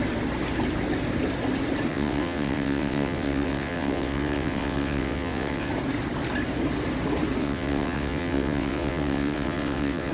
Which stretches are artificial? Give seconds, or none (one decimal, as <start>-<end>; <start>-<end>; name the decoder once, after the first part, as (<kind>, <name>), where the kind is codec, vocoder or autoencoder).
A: 1.9-5.7 (vocoder, WaveNeXt); 7.4-10.1

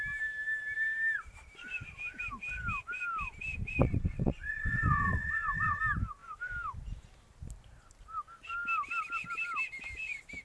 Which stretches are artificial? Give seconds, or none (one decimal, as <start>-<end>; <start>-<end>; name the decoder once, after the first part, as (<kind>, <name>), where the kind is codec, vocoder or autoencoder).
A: 3.8-5.8 (vocoder, WaveNeXt)

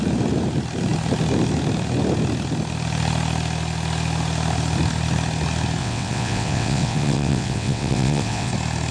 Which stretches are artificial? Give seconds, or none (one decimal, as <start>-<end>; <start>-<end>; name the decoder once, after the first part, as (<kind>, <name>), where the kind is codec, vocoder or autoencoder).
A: 5.8-8.5 (vocoder, WaveNeXt)

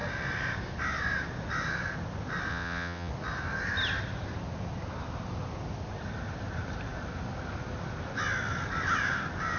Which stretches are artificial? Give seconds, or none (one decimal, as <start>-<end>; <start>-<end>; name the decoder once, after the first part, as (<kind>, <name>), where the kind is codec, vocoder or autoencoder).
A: 2.5-3.1 (vocoder, WaveNeXt)